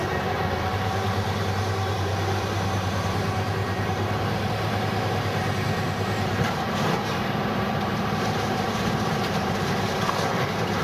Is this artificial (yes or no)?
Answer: yes